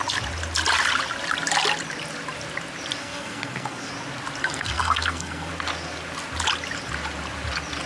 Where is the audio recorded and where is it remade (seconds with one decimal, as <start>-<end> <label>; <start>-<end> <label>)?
0.0-3.0 recorded; 3.0-3.9 remade; 3.9-4.4 recorded; 4.4-5.5 remade; 5.5-7.9 recorded